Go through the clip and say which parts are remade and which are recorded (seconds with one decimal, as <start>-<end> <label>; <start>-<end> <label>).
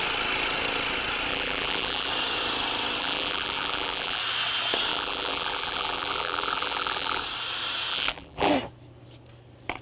0.0-1.3 recorded; 1.3-2.1 remade; 2.1-3.0 recorded; 3.0-4.2 remade; 4.2-4.9 recorded; 4.9-7.2 remade; 7.2-7.9 recorded; 7.9-8.5 remade; 8.5-9.8 recorded